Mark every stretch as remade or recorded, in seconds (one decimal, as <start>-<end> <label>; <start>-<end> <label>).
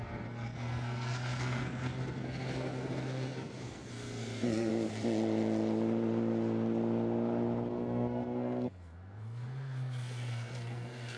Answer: 0.0-4.7 remade; 4.7-7.7 recorded; 7.7-11.2 remade